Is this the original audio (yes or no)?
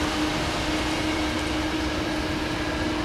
yes